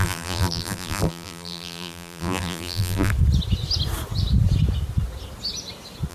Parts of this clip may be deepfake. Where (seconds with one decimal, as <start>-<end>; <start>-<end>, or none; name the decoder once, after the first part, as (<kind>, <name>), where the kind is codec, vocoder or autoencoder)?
0.0-3.1 (vocoder, BigVGAN v2)

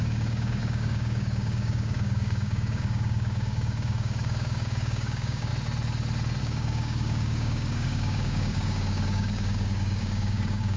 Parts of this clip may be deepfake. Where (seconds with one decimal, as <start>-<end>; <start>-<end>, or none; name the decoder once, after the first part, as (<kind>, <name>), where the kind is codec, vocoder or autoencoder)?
0.0-5.5 (codec, DAC); 6.4-10.8

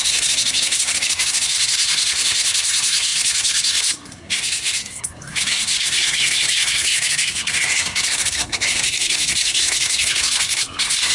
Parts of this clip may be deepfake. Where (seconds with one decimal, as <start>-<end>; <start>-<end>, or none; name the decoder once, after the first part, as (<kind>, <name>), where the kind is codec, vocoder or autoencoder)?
0.0-11.1 (codec, SNAC)